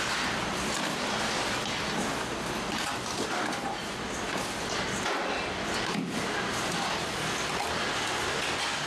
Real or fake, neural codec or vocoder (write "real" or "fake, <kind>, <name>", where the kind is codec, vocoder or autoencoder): real